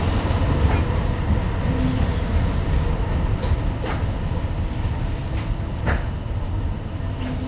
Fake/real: real